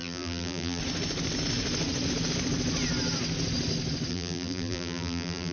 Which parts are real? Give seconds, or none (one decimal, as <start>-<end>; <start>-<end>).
0.8-4.1